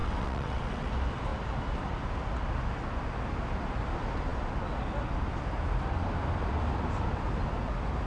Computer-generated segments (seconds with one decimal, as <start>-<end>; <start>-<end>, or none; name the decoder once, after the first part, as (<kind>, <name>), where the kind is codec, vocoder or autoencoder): 0.0-0.9 (vocoder, WaveNeXt)